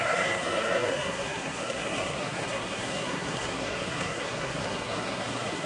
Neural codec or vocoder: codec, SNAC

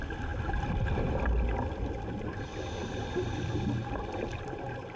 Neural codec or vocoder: none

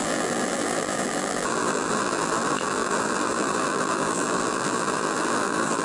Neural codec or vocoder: vocoder, BigVGAN v2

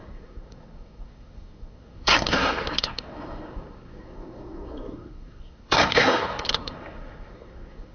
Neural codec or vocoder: codec, SNAC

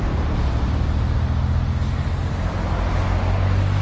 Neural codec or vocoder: none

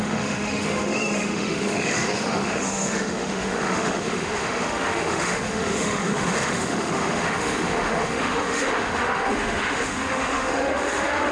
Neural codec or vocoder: autoencoder, DAC-VAE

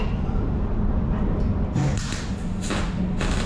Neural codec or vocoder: none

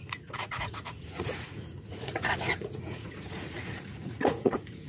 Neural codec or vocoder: vocoder, Vocos